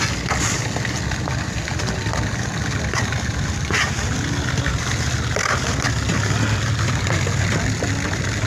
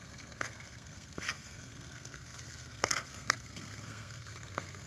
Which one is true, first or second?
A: first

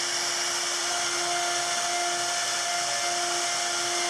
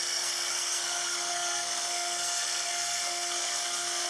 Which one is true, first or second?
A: first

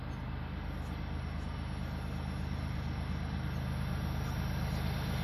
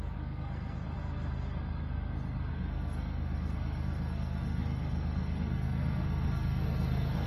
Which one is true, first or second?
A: first